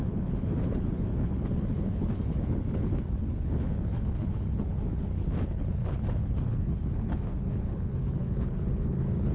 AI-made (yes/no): yes